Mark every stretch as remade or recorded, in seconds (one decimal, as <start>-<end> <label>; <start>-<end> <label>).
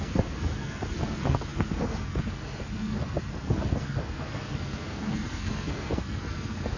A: 0.0-6.8 remade